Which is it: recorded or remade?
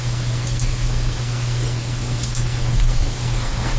remade